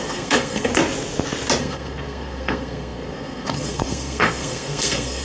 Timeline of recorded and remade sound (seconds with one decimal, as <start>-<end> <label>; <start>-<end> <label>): 0.0-0.7 remade; 0.7-1.6 recorded; 1.6-5.2 remade